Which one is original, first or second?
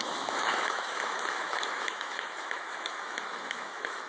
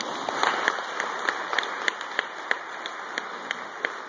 second